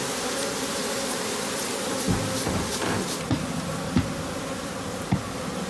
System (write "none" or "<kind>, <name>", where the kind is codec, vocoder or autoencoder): none